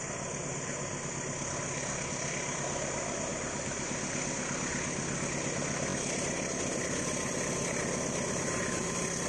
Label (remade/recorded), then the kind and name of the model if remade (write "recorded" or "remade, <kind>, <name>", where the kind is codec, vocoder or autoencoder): recorded